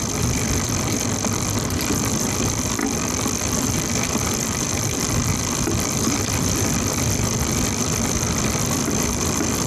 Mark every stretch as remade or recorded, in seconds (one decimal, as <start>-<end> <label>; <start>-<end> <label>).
0.0-2.8 remade; 2.8-3.6 recorded; 3.6-9.7 remade